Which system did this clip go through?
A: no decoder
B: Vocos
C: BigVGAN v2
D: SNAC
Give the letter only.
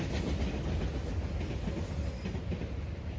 A